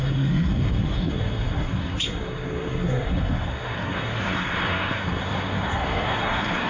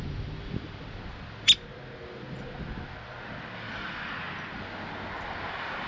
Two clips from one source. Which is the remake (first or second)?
first